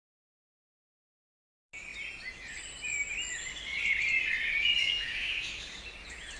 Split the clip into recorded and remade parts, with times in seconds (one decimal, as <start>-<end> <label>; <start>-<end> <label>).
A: 0.0-4.8 recorded; 4.8-5.7 remade; 5.7-6.4 recorded